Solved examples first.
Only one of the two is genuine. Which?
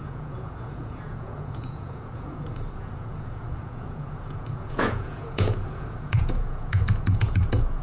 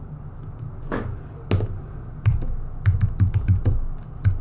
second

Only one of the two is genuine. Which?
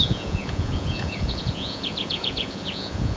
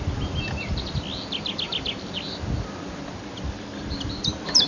second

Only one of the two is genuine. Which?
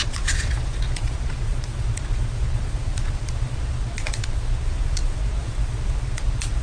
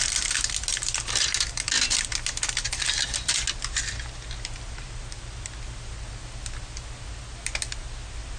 second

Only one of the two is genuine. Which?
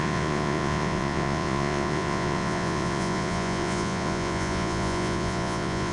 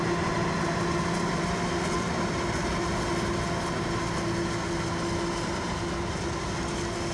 second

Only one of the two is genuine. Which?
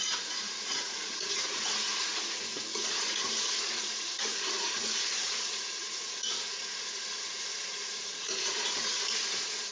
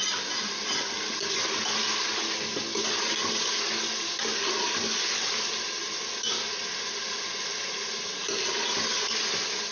second